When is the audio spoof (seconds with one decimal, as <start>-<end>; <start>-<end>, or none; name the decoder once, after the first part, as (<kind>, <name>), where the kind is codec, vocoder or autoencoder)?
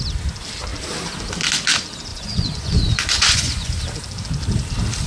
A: 2.1-3.8 (vocoder, Vocos)